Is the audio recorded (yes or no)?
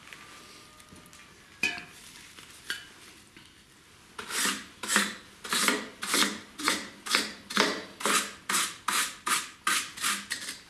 yes